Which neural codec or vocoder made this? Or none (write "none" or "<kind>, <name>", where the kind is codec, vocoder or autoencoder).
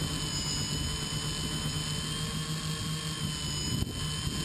none